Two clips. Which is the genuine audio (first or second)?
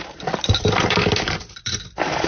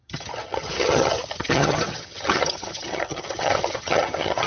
first